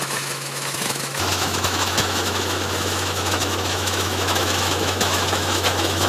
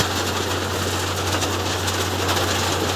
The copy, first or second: first